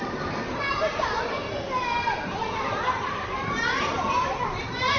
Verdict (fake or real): fake